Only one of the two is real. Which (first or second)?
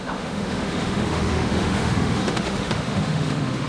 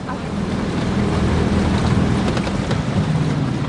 second